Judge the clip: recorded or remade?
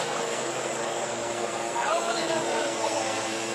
remade